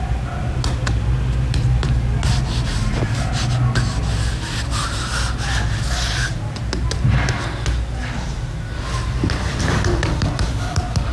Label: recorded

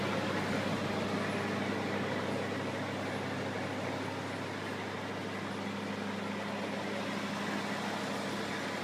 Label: recorded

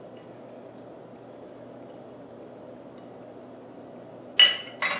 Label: recorded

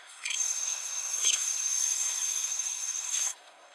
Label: remade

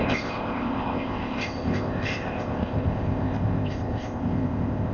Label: remade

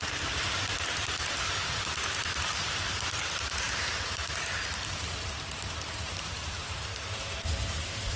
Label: remade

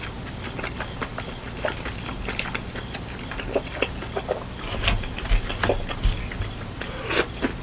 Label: recorded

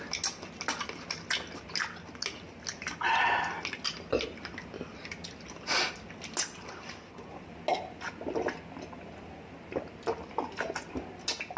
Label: recorded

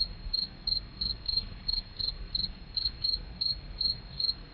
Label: remade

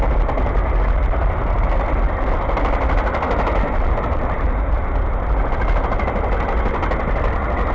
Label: recorded